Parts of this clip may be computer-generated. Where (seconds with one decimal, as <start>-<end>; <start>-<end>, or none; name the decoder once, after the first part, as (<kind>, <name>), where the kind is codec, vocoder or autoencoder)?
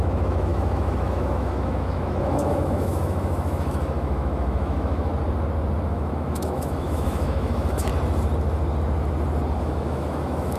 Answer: 0.0-5.1 (autoencoder, DAC-VAE); 5.9-7.9; 9.6-10.6